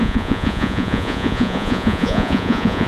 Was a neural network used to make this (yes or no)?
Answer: yes